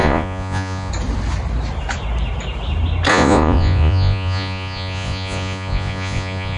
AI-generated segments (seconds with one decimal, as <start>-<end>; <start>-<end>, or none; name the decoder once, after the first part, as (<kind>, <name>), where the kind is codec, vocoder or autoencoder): 0.0-0.9 (vocoder, Vocos); 3.1-6.6